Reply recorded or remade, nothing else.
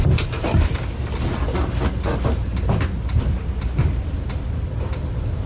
recorded